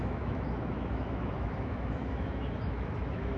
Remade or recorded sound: remade